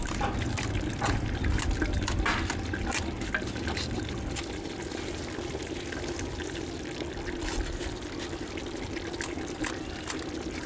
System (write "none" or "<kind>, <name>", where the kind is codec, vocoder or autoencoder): none